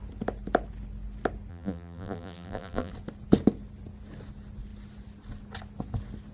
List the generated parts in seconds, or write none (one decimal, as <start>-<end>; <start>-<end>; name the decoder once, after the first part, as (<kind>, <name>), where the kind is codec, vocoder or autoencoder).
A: 1.5-2.9 (vocoder, BigVGAN v2)